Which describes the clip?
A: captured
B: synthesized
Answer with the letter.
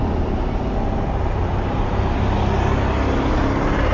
A